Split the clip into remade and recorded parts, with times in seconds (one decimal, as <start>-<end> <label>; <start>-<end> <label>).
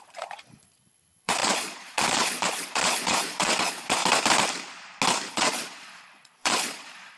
0.0-4.0 remade; 4.0-5.3 recorded; 5.3-7.2 remade